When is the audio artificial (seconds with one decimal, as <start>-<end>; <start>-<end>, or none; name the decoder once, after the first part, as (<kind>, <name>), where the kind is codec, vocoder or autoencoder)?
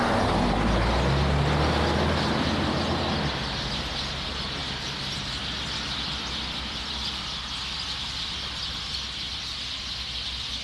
none